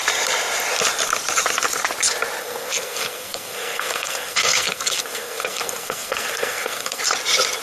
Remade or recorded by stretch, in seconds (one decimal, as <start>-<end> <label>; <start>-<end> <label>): 0.0-2.4 recorded; 2.4-7.0 remade; 7.0-7.6 recorded